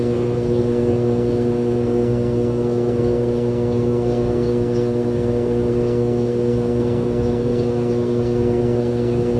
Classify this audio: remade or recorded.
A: remade